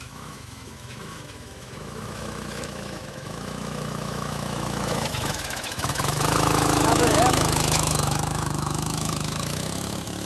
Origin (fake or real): fake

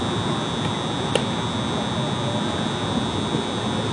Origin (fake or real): real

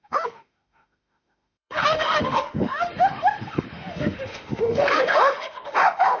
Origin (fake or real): fake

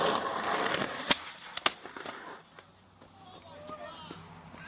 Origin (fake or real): real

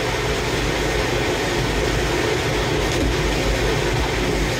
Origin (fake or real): real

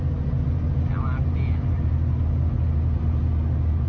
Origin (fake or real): real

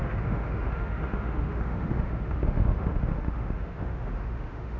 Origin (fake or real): fake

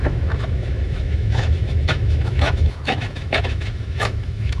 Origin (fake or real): fake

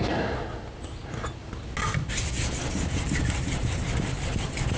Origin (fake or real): real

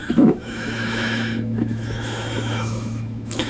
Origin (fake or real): fake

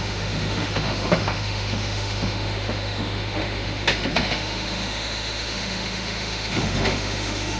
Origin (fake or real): fake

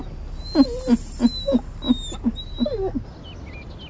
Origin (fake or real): real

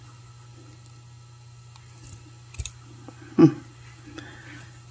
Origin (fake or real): real